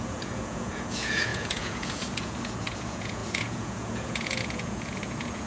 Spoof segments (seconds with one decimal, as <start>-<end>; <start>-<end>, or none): 0.0-5.5